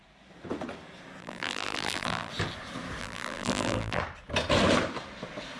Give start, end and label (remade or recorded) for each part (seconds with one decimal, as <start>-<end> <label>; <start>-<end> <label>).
0.0-1.2 recorded; 1.2-2.3 remade; 2.3-3.0 recorded; 3.0-4.0 remade; 4.0-5.6 recorded